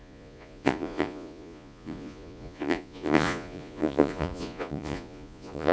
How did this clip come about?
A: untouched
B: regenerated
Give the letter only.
B